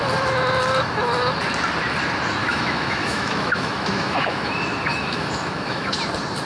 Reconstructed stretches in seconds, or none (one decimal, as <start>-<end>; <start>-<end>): 2.4-5.9